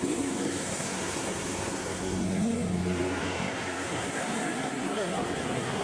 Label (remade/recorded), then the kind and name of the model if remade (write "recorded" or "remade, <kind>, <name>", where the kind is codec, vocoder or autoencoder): remade, codec, SNAC